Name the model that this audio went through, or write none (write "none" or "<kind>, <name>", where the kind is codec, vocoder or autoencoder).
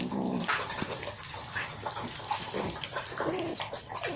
none